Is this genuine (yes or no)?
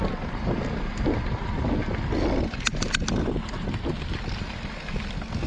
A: yes